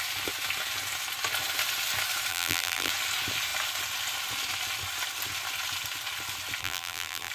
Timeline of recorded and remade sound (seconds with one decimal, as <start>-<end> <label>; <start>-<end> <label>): 0.0-2.3 recorded; 2.3-2.9 remade; 2.9-6.6 recorded; 6.6-7.3 remade